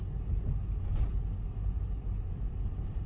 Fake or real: real